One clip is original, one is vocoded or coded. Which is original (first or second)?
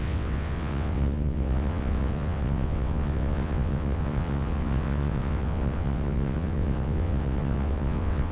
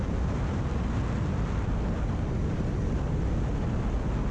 second